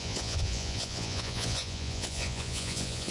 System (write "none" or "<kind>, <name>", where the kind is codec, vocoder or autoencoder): vocoder, Vocos